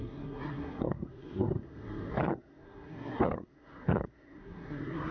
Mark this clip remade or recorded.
remade